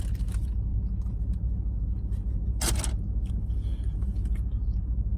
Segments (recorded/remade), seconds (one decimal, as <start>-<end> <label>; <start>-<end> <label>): 0.0-5.2 recorded